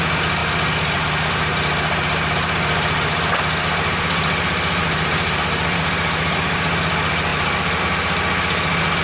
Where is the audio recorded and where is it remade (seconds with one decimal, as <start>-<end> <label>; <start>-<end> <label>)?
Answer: 0.0-0.4 recorded; 0.4-3.4 remade; 3.4-4.8 recorded; 4.8-6.8 remade; 6.8-9.0 recorded